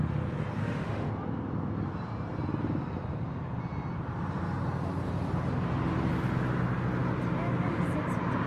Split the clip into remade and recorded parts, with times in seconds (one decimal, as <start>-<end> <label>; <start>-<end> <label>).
0.0-0.6 recorded; 0.6-1.1 remade; 1.1-8.5 recorded